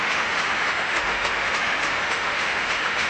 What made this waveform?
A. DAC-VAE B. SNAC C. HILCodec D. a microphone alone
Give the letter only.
A